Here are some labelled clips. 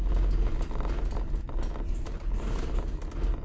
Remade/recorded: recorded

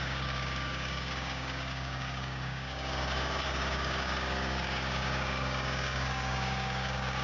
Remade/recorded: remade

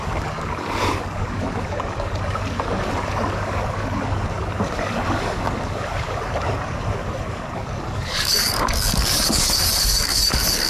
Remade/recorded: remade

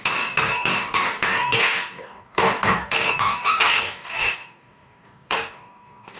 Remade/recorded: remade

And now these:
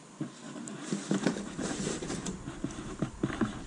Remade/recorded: recorded